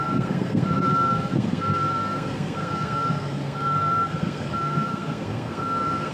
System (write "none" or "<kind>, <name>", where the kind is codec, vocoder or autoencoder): codec, SNAC